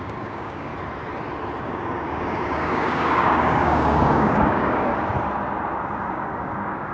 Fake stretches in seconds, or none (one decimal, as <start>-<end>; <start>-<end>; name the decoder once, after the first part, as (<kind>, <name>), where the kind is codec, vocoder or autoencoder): 0.0-0.7 (codec, DAC); 1.6-4.9; 6.1-6.9